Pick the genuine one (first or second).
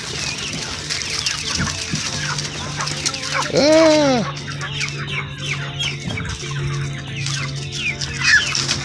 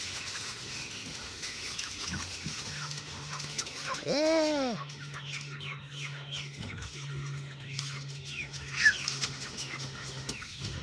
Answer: first